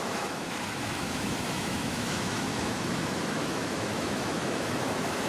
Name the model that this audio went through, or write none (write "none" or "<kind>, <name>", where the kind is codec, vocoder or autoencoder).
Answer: autoencoder, DAC-VAE